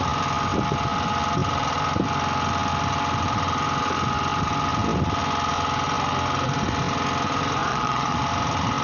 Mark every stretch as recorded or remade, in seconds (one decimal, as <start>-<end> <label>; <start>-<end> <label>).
0.0-7.7 recorded; 7.7-8.2 remade; 8.2-8.8 recorded